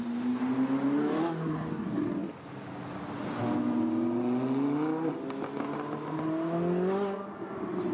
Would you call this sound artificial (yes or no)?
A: no